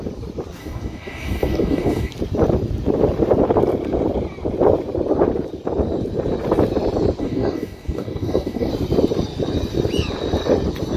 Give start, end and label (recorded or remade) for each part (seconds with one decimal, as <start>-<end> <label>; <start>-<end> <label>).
0.0-0.6 recorded; 0.6-2.1 remade; 2.1-7.2 recorded; 7.2-8.7 remade; 8.7-11.0 recorded